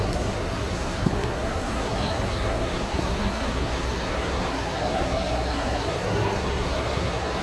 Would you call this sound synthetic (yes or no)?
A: yes